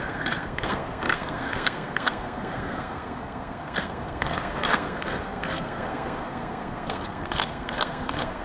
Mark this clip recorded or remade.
remade